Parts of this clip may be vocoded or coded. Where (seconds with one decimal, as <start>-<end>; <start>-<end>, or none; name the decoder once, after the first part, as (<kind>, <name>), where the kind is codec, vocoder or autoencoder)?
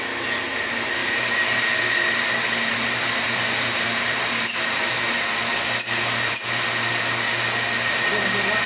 1.0-4.9 (vocoder, BigVGAN v2)